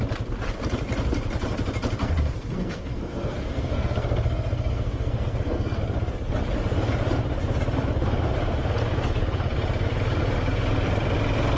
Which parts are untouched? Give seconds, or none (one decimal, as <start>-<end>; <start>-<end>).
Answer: 0.0-2.0; 5.8-11.6